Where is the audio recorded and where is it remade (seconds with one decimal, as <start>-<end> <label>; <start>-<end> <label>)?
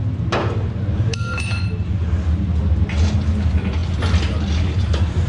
0.0-5.3 recorded